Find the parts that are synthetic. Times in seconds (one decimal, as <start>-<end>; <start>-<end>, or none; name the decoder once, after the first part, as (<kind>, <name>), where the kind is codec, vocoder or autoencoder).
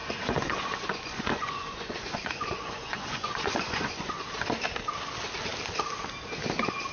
0.0-4.1 (vocoder, Vocos)